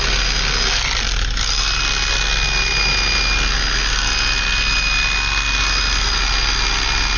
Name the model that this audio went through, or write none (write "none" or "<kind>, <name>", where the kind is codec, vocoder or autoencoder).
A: none